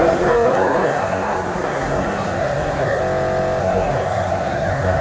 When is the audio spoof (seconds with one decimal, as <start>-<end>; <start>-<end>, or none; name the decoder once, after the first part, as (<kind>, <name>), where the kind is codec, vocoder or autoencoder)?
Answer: 0.0-3.0 (codec, SNAC); 3.6-5.0